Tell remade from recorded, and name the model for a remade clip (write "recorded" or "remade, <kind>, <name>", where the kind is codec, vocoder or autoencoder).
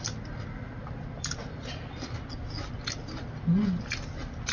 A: recorded